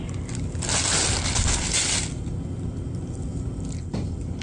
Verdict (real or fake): real